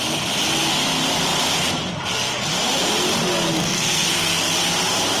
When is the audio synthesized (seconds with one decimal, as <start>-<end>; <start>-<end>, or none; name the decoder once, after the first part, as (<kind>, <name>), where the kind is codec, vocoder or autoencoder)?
3.5-4.5 (codec, SNAC)